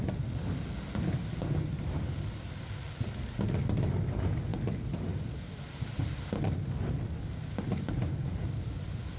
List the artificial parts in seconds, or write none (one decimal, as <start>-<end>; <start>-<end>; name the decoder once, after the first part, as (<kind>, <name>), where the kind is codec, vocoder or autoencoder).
none